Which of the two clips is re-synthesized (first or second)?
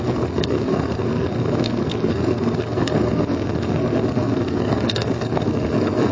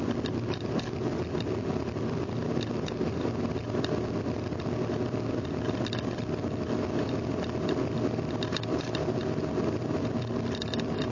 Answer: first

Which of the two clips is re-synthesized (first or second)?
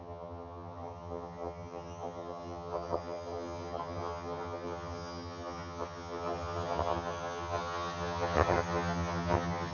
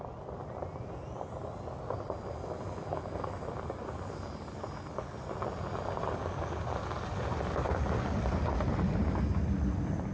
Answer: first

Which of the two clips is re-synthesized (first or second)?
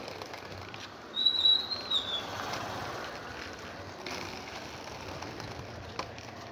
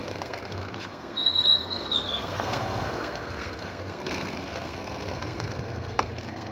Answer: second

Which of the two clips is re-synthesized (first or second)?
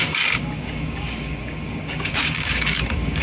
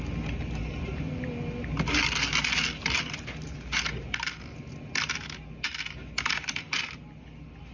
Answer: first